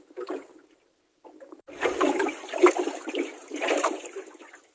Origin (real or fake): real